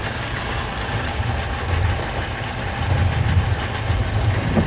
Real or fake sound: real